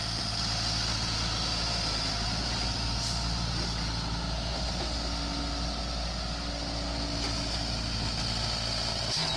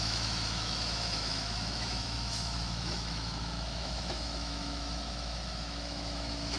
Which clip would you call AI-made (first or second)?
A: second